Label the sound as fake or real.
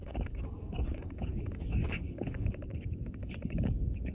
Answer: fake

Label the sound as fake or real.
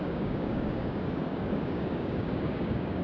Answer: fake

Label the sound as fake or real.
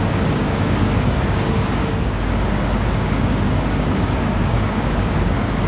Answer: fake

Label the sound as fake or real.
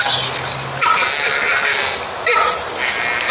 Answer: real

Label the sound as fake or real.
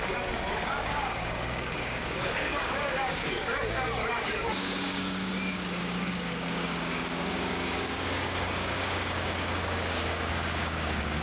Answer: fake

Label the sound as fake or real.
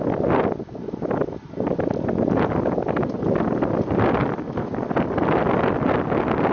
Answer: real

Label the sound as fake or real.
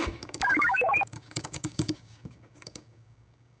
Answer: fake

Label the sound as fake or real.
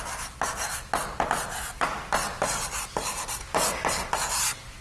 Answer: real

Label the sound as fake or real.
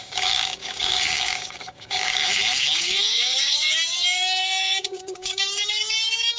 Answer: fake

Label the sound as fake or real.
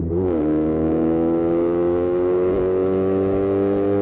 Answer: fake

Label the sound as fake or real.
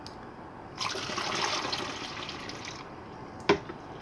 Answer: real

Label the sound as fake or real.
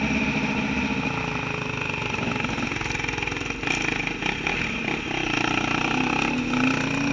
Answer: real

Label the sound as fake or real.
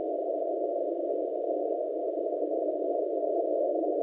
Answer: fake